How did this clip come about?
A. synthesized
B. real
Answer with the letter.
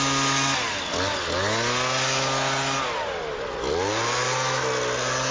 B